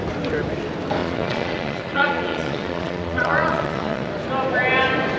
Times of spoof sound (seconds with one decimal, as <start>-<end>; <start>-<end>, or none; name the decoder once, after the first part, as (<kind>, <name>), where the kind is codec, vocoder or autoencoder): 1.0-4.1 (vocoder, Vocos)